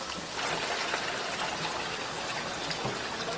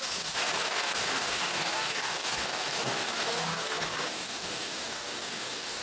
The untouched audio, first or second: first